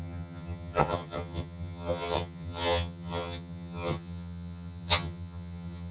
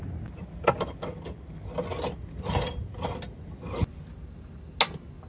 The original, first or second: second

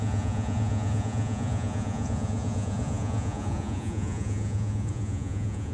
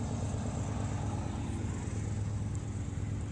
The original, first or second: second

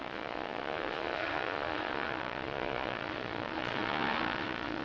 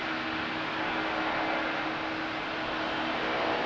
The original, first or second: second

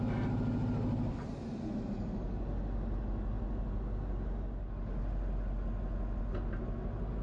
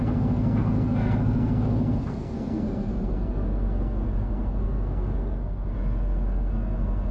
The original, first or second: first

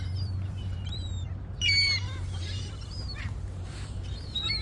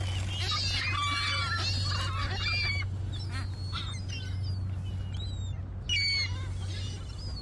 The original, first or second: second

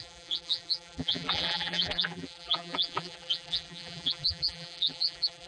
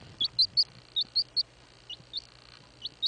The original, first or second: second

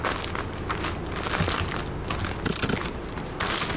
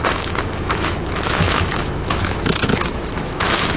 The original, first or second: first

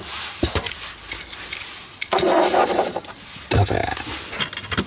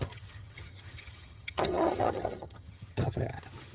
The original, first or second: first